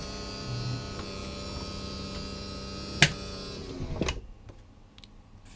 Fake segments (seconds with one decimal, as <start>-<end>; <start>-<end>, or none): none